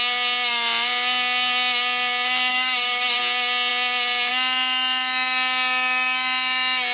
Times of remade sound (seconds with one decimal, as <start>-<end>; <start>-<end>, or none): 2.5-3.2

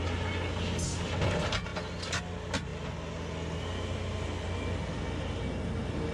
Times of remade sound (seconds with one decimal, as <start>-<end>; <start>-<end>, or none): none

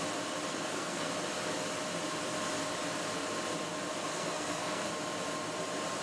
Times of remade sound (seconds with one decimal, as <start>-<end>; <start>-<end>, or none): 0.5-1.1; 4.1-4.9

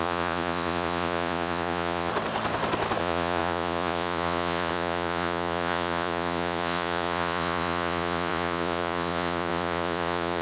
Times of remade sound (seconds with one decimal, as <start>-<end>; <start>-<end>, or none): 0.0-2.1; 3.0-10.4

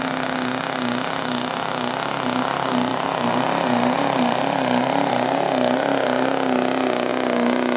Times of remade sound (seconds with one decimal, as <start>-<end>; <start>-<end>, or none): 2.9-5.1

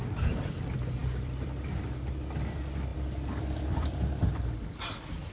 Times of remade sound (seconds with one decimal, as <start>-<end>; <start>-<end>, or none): 1.0-1.7; 2.9-4.6

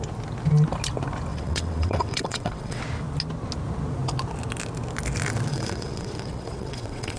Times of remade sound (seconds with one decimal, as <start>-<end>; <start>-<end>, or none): 1.3-2.8; 5.5-7.2

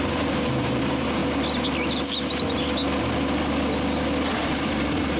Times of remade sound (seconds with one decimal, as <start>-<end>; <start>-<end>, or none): 0.0-1.2; 4.3-5.2